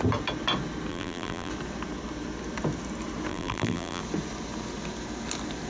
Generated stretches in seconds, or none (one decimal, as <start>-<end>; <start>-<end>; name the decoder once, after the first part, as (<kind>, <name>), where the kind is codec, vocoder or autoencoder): 0.9-1.5 (vocoder, BigVGAN v2); 3.3-4.0